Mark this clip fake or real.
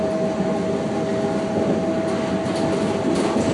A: real